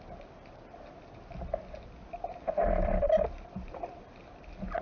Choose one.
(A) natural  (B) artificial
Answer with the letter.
A